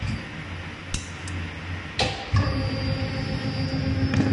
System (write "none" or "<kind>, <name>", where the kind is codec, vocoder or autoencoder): none